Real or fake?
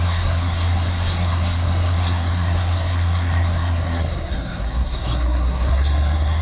fake